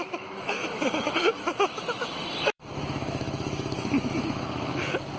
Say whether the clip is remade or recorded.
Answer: remade